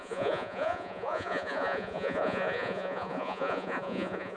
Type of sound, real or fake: fake